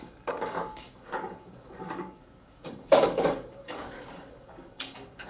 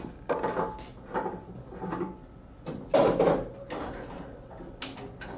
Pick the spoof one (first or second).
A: first